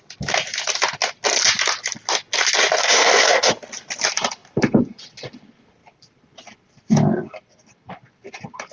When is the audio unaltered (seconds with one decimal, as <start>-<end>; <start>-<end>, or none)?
0.0-2.8; 3.5-8.7